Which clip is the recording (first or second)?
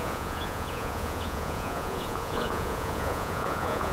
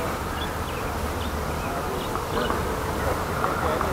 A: second